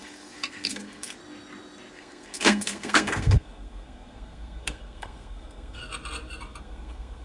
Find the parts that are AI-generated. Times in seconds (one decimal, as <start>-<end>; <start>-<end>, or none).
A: 0.0-1.2; 1.9-5.8; 6.6-7.2